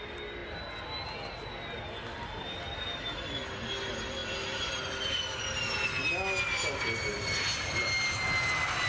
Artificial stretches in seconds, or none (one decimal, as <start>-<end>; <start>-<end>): none